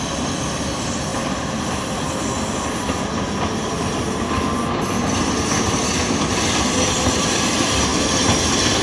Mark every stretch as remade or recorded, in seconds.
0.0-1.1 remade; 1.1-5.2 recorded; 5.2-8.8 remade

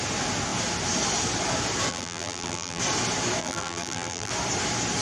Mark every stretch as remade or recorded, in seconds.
0.0-1.9 recorded; 1.9-2.8 remade; 2.8-3.4 recorded; 3.4-4.3 remade; 4.3-5.0 recorded

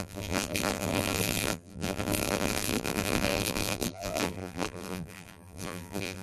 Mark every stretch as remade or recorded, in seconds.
0.0-6.2 remade

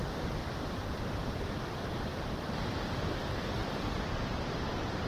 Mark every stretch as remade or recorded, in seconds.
0.0-5.1 remade

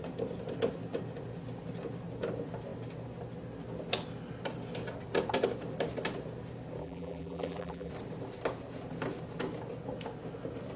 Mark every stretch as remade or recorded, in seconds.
0.0-6.8 recorded; 6.8-7.9 remade; 7.9-10.8 recorded